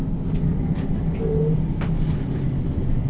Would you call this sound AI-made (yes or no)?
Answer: no